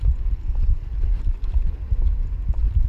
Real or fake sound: real